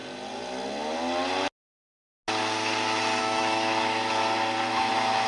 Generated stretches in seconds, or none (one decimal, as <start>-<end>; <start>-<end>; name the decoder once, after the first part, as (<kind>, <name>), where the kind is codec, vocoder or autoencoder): 3.2-4.2 (autoencoder, DAC-VAE); 4.7-5.3

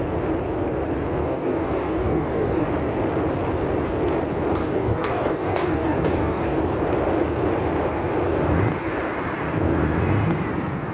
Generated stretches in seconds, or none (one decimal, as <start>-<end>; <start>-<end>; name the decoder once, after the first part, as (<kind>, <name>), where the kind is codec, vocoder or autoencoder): 1.2-2.7 (codec, DAC); 4.6-6.6

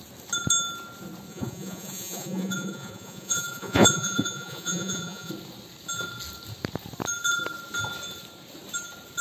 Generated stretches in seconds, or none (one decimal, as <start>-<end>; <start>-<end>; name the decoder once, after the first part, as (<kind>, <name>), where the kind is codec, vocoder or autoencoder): 1.3-5.3 (vocoder, Vocos)